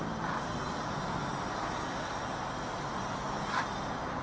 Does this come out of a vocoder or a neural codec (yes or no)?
no